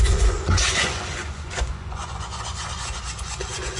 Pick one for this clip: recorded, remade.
remade